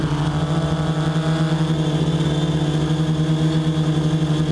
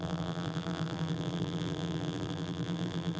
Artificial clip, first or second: second